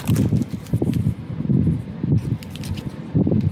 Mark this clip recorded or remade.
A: recorded